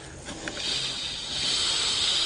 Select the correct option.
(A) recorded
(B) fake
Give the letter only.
A